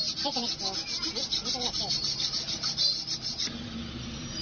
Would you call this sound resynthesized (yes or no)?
no